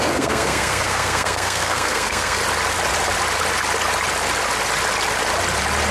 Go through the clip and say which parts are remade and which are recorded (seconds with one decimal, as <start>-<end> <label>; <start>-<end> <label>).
0.0-2.4 remade; 2.4-5.9 recorded